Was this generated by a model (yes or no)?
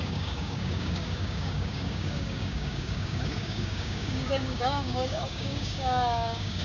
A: yes